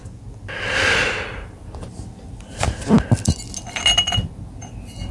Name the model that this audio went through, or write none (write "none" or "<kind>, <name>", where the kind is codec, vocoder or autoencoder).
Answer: none